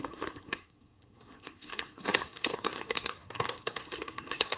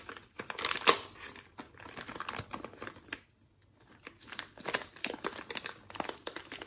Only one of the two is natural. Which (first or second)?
second